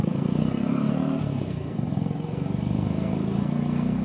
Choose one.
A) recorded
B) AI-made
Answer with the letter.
B